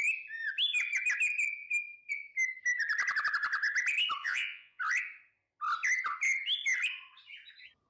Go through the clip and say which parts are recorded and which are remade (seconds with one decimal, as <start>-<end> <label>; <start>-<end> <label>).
0.0-4.2 recorded; 4.2-4.8 remade; 4.8-7.9 recorded